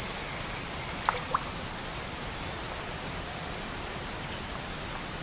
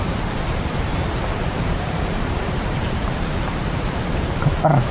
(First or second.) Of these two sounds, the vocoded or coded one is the second